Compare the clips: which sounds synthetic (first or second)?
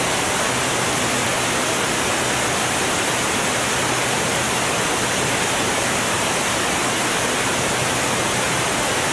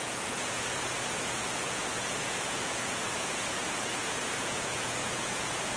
second